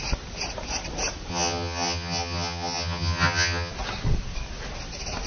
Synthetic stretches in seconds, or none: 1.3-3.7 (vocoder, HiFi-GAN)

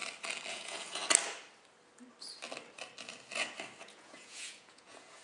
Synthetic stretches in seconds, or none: 0.5-1.0 (vocoder, Vocos); 3.8-5.2